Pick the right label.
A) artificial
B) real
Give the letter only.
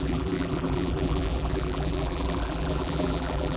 A